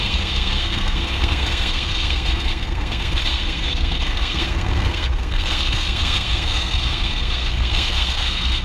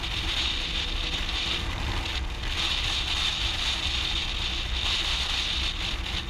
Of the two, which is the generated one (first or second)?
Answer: first